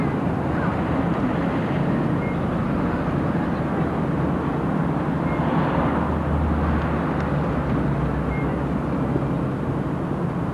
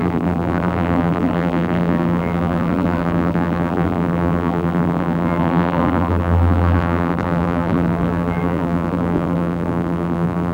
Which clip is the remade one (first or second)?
second